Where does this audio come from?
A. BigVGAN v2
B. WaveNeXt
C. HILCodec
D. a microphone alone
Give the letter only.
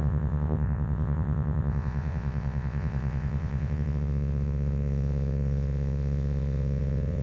B